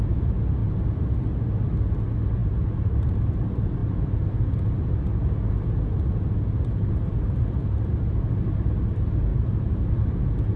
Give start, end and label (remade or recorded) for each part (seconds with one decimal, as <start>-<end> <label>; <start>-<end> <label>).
0.0-2.4 recorded; 2.4-3.4 remade; 3.4-9.3 recorded; 9.3-9.9 remade; 9.9-10.6 recorded